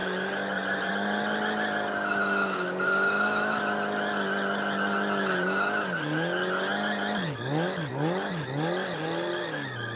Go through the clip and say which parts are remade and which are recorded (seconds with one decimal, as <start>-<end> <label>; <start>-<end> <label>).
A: 0.0-0.9 remade; 0.9-10.0 recorded